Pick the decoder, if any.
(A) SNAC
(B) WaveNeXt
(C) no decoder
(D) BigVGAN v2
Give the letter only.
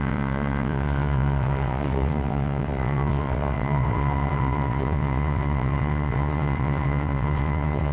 B